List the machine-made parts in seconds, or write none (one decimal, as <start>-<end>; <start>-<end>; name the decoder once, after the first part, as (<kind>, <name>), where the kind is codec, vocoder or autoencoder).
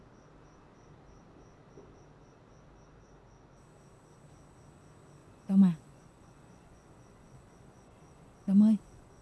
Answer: 5.2-9.2 (vocoder, Vocos)